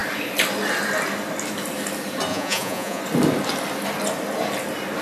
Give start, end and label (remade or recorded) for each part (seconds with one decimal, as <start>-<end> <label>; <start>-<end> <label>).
0.0-2.3 recorded; 2.3-3.0 remade; 3.0-5.0 recorded